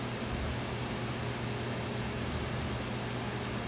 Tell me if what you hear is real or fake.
real